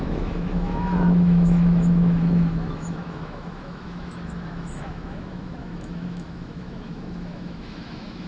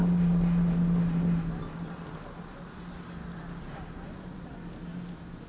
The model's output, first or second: first